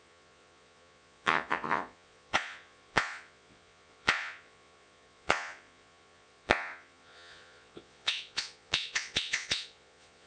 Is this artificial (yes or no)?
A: yes